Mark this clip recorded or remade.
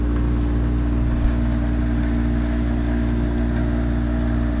recorded